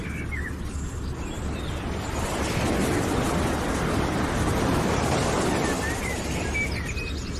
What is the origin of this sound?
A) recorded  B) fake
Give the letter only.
A